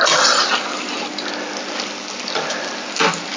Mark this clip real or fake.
real